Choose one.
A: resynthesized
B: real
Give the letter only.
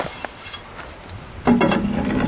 B